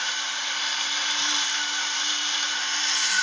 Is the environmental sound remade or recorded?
remade